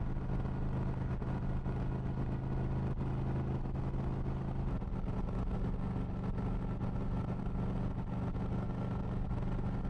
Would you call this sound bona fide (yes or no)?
yes